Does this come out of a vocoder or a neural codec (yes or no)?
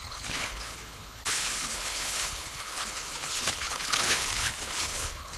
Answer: yes